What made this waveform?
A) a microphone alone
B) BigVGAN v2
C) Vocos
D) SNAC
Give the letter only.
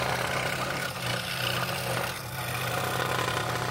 A